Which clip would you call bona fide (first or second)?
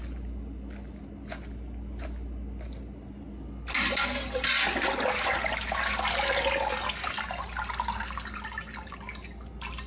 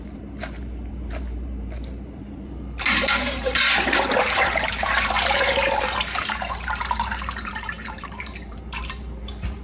first